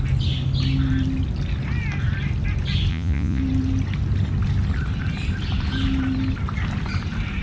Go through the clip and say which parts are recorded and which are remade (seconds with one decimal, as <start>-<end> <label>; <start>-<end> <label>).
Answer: 0.0-2.9 recorded; 2.9-3.4 remade; 3.4-7.4 recorded